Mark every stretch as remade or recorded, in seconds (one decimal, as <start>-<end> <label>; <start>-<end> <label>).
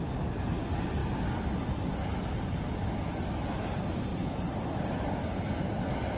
0.0-4.1 recorded; 4.1-5.1 remade; 5.1-6.2 recorded